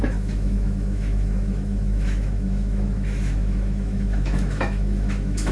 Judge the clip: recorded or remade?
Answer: remade